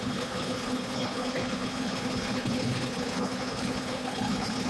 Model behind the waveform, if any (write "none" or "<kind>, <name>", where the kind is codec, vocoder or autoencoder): codec, HILCodec